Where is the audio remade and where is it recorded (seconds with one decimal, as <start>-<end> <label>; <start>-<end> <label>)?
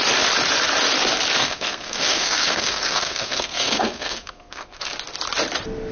0.0-1.4 recorded; 1.4-4.9 remade; 4.9-5.9 recorded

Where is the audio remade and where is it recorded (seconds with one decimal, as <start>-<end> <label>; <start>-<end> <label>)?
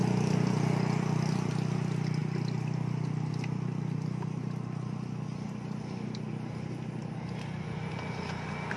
0.0-2.2 recorded; 2.2-3.3 remade; 3.3-8.8 recorded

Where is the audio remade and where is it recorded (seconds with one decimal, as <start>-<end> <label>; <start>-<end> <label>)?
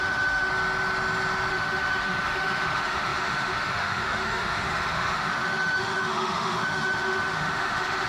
0.0-0.5 remade; 0.5-1.5 recorded; 1.5-8.1 remade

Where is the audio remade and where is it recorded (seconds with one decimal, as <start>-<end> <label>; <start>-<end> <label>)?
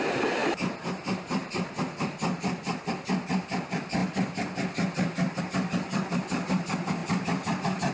0.0-7.9 recorded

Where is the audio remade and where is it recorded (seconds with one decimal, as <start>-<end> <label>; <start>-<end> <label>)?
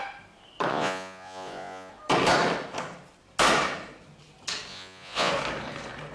0.0-0.7 recorded; 0.7-1.9 remade; 1.9-4.7 recorded; 4.7-5.3 remade; 5.3-6.1 recorded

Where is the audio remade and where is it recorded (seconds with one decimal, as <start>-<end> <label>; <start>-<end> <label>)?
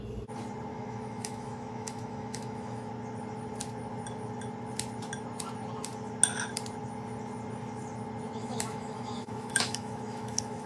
0.0-0.7 recorded; 0.7-2.9 remade; 2.9-8.4 recorded; 8.4-10.7 remade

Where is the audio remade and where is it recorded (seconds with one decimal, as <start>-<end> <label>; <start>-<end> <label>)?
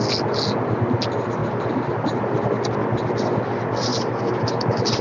0.0-1.4 recorded; 1.4-1.9 remade; 1.9-3.9 recorded; 3.9-5.0 remade